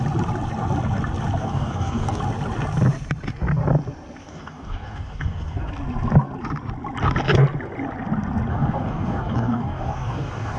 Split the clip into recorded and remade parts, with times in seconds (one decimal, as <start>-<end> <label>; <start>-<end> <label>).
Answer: 0.0-1.4 recorded; 1.4-2.2 remade; 2.2-4.2 recorded; 4.2-5.7 remade; 5.7-8.5 recorded; 8.5-10.6 remade